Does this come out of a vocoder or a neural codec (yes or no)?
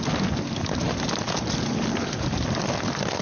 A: no